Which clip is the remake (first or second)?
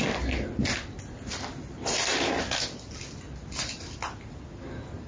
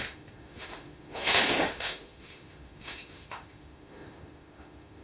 second